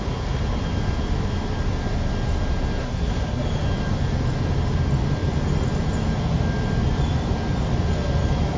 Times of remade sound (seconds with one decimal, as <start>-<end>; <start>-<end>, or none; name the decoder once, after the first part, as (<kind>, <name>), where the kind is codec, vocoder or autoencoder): 2.8-3.4 (codec, SNAC)